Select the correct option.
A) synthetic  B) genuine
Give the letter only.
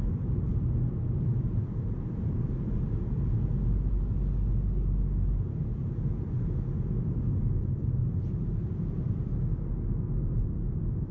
B